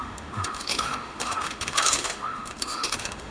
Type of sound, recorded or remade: remade